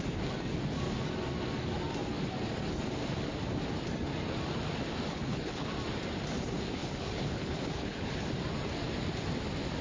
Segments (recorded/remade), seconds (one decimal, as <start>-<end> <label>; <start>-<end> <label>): 0.0-5.1 recorded; 5.1-5.7 remade; 5.7-6.8 recorded; 6.8-8.2 remade; 8.2-9.8 recorded